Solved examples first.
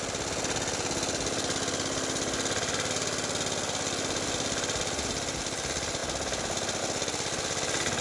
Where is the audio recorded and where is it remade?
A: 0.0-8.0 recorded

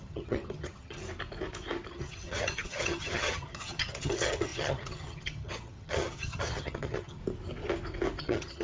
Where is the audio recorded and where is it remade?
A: 0.0-1.0 remade; 1.0-1.9 recorded; 1.9-7.2 remade; 7.2-8.2 recorded; 8.2-8.6 remade